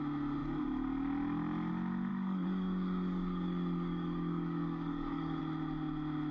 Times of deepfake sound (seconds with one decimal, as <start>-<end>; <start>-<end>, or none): 2.1-5.4

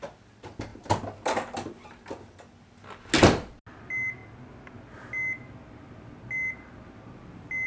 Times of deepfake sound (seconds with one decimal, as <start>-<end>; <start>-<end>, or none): none

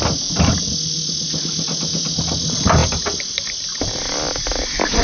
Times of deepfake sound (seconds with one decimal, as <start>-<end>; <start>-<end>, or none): none

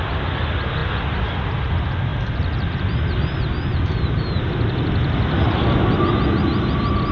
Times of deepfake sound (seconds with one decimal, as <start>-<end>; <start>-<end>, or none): none

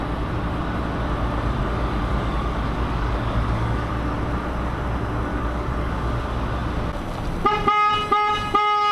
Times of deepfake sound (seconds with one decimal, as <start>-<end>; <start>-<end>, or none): 1.6-3.9; 5.3-5.9

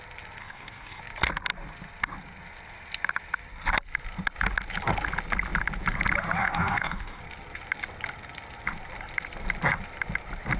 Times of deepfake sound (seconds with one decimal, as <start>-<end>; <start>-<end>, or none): 0.4-1.0; 6.4-7.2

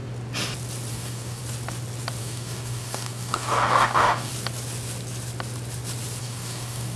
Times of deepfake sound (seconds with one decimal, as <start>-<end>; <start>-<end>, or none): 0.9-1.4; 2.2-4.3; 6.2-7.0